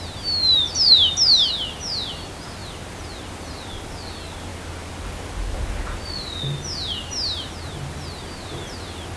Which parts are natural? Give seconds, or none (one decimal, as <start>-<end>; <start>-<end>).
0.0-9.2